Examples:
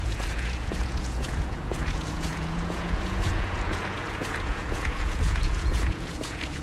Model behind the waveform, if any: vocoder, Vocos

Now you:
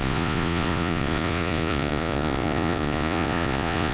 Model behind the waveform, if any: vocoder, Vocos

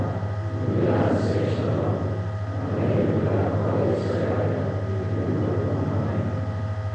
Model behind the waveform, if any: none